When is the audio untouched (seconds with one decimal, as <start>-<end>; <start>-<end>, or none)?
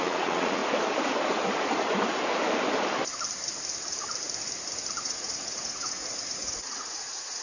0.6-5.0